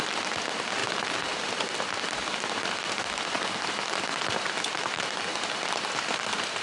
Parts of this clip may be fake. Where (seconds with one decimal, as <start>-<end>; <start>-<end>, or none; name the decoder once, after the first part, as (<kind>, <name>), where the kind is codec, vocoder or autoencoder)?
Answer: none